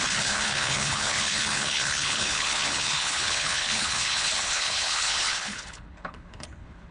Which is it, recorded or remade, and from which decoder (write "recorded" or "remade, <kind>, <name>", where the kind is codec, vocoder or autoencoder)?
remade, codec, HILCodec